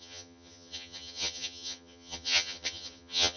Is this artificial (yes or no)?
yes